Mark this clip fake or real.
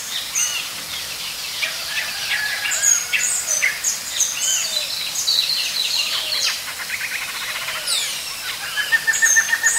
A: fake